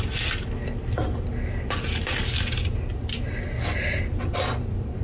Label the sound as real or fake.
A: real